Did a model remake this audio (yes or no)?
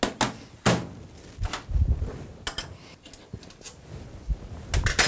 no